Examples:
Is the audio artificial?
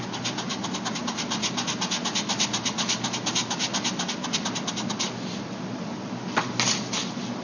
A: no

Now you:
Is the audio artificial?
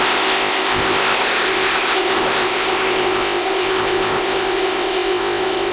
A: yes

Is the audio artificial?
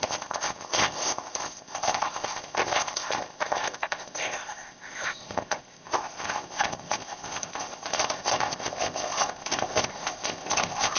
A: yes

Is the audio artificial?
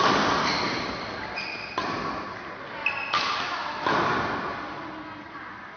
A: no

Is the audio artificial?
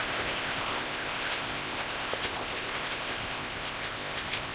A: yes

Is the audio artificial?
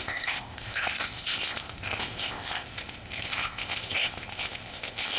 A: yes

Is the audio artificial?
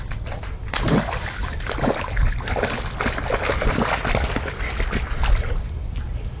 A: no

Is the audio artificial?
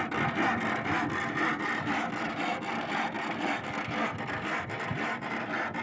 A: no